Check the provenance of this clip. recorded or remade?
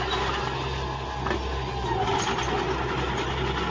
recorded